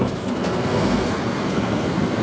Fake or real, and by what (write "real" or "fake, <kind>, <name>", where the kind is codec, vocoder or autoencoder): fake, codec, SNAC